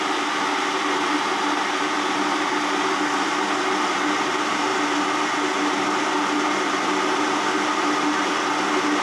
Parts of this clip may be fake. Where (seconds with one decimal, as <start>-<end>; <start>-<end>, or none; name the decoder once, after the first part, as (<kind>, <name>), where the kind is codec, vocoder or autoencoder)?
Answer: none